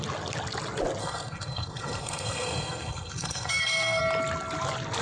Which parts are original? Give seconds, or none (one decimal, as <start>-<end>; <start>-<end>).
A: 0.0-1.0; 4.0-5.0